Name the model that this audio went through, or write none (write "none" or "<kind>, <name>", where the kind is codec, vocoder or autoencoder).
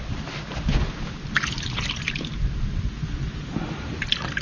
none